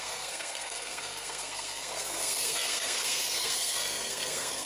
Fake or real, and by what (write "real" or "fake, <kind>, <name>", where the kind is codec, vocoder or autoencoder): fake, codec, SNAC